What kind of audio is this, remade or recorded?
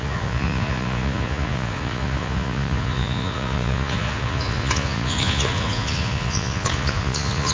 remade